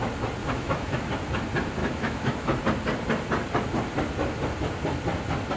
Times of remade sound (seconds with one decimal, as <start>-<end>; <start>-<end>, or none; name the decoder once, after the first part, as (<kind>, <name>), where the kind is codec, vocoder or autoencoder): 0.4-1.1 (autoencoder, DAC-VAE); 1.8-2.6

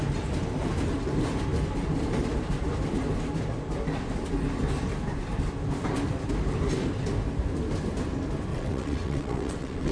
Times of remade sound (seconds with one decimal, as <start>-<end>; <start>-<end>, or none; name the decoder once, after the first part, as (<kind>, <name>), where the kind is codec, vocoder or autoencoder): 8.5-9.9 (vocoder, WaveNeXt)

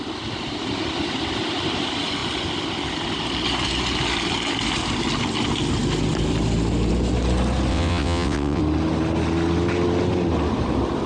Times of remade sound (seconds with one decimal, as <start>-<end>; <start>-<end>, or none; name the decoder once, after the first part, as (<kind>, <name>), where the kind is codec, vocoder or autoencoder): 7.7-8.6 (vocoder, WaveNeXt)

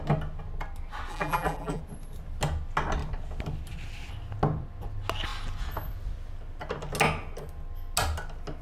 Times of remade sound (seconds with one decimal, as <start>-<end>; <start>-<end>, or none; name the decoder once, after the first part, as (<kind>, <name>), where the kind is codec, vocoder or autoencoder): 1.1-1.8 (vocoder, BigVGAN v2)